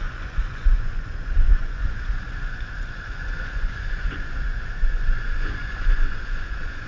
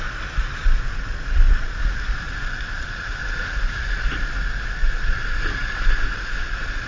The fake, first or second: first